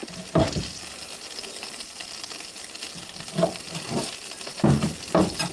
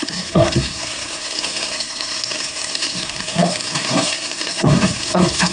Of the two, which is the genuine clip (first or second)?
first